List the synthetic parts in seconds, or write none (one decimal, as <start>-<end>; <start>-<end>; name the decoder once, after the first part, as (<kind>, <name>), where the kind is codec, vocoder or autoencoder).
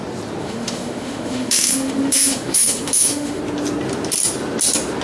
0.4-3.4 (autoencoder, DAC-VAE)